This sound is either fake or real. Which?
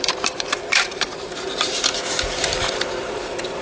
fake